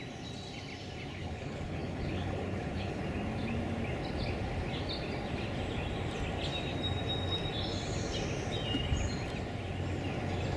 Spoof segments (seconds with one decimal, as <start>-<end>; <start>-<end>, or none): 1.1-3.0